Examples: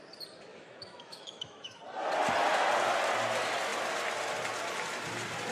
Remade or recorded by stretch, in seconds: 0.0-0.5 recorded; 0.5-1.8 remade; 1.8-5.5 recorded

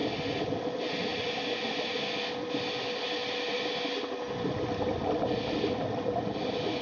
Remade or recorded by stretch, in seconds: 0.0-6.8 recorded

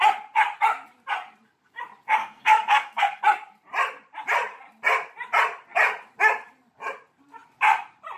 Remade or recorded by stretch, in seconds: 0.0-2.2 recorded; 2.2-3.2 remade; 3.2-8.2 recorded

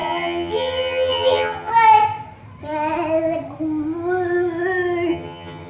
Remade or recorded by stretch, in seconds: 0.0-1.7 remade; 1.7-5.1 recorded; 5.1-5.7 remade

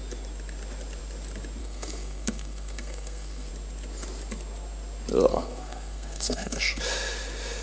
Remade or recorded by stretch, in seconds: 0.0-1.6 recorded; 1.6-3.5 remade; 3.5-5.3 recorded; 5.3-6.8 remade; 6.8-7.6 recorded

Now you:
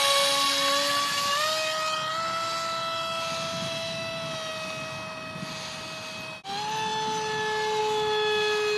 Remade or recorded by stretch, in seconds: 0.0-8.8 recorded

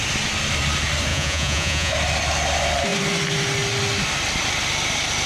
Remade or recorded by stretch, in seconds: 0.0-1.1 recorded; 1.1-1.9 remade; 1.9-5.3 recorded